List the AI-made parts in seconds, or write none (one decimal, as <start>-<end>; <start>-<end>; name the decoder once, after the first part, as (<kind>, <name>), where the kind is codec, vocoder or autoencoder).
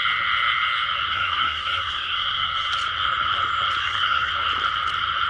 1.1-2.7 (codec, SNAC); 3.8-4.3